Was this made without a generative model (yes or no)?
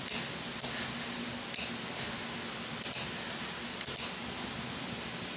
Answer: yes